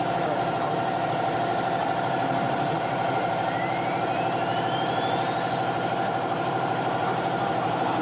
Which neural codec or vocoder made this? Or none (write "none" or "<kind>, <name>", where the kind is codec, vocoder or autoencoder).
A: vocoder, BigVGAN v2